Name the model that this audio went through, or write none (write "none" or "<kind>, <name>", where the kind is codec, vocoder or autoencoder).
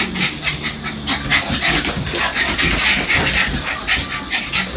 none